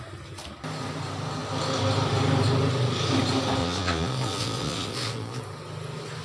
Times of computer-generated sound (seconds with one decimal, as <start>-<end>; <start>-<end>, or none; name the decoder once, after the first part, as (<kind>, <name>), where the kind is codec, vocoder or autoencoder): 3.6-5.4 (vocoder, Vocos)